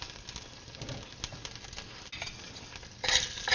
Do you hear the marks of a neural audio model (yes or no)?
no